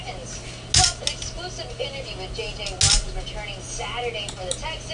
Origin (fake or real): real